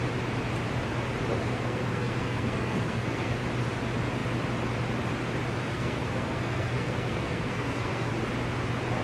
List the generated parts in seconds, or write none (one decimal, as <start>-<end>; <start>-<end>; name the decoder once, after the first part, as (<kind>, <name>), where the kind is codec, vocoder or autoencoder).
1.4-3.4 (codec, SNAC); 5.7-8.1